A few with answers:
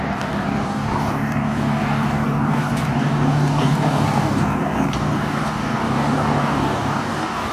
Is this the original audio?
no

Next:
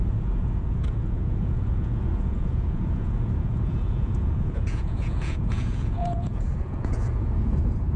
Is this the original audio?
no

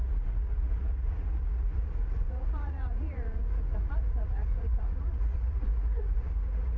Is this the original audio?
no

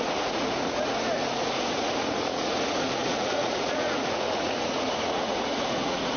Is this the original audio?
no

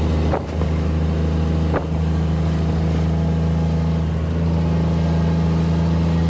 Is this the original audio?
yes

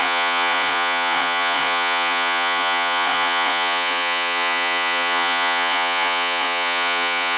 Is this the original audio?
no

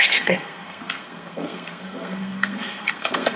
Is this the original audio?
no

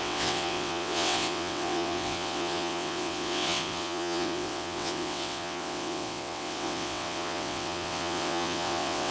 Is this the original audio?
no